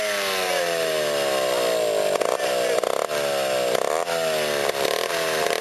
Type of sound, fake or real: real